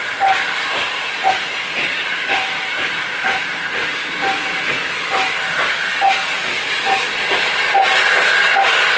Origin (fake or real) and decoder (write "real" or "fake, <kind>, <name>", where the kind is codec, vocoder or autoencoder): real